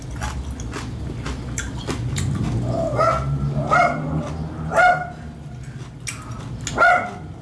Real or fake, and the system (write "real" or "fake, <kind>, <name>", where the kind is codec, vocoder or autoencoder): real